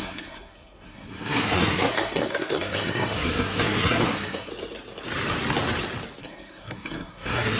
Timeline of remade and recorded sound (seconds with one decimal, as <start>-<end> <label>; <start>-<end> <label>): 0.0-4.5 remade; 4.5-6.2 recorded; 6.2-7.6 remade